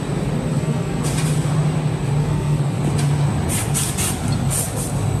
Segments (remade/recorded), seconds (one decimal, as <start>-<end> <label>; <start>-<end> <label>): 0.0-0.5 recorded; 0.5-1.0 remade; 1.0-2.2 recorded; 2.2-2.8 remade; 2.8-5.2 recorded